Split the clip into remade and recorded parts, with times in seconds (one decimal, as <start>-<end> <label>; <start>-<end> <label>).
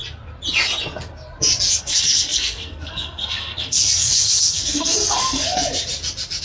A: 0.0-1.8 recorded; 1.8-5.6 remade; 5.6-6.4 recorded